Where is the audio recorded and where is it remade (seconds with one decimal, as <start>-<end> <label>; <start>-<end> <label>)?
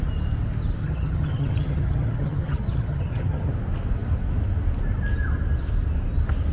0.0-0.8 recorded; 0.8-3.5 remade; 3.5-6.5 recorded